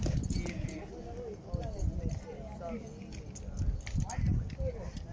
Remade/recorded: recorded